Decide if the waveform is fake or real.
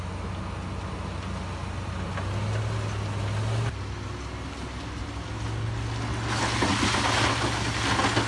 real